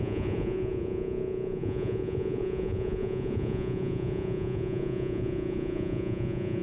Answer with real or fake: fake